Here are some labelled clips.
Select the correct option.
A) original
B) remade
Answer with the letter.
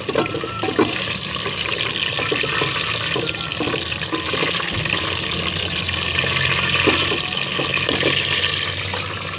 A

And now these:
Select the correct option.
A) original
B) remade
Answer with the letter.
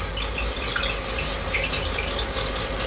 A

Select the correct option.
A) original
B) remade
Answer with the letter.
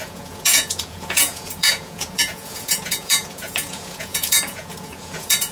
B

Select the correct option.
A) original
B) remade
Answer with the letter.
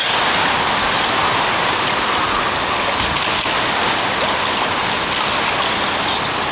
A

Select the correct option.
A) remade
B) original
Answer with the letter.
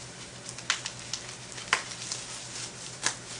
B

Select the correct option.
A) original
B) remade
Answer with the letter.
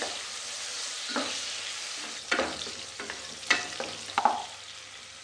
A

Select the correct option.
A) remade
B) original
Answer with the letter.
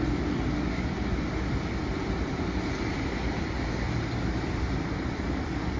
B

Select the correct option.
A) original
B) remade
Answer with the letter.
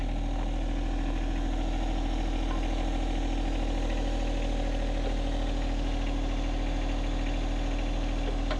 A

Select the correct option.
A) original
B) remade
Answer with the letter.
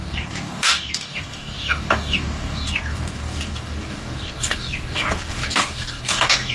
B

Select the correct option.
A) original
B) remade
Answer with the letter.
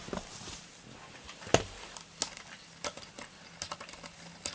A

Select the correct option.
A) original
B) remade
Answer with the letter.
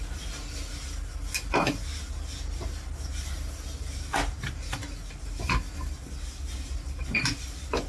A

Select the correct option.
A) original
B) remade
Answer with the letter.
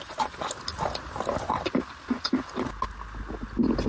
A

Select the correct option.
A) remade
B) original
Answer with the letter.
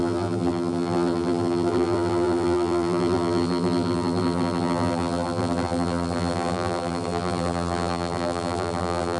A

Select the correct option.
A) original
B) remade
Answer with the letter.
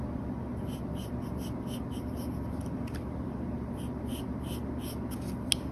A